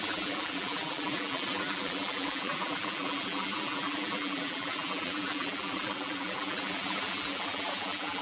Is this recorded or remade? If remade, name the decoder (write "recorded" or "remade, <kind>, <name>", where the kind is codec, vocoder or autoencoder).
remade, vocoder, BigVGAN v2